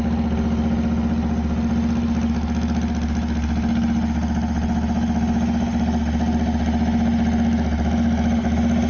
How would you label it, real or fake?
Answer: real